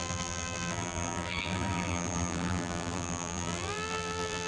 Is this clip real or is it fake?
fake